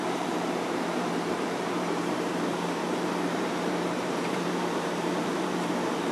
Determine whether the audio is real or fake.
fake